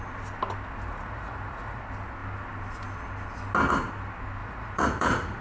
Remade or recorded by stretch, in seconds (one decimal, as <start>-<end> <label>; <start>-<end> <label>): 0.0-0.9 recorded; 0.9-1.8 remade; 1.8-4.4 recorded; 4.4-5.4 remade